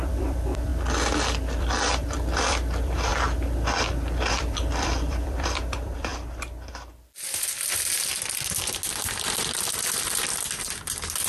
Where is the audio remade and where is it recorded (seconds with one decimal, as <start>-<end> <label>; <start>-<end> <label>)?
0.0-0.7 remade; 0.7-1.6 recorded; 1.6-3.1 remade; 3.1-4.3 recorded; 4.3-6.1 remade; 6.1-10.8 recorded; 10.8-11.3 remade

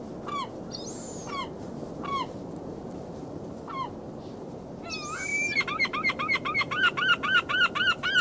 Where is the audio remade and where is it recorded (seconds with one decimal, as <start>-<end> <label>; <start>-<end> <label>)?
0.0-1.2 recorded; 1.2-4.7 remade; 4.7-5.3 recorded; 5.3-8.2 remade

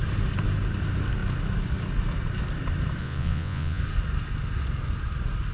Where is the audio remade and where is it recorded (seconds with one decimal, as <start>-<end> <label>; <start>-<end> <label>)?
0.0-3.0 recorded; 3.0-3.8 remade; 3.8-5.5 recorded